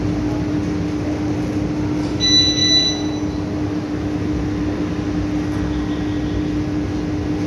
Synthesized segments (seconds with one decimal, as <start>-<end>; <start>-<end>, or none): none